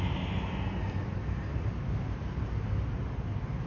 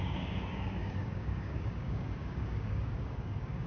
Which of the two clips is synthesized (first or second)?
second